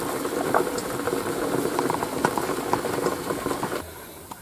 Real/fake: real